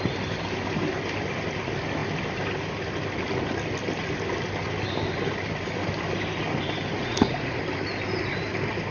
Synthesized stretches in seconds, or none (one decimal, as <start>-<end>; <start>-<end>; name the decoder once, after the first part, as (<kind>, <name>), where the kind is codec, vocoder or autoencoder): 7.0-7.6 (vocoder, Vocos)